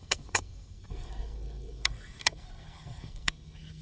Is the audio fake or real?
fake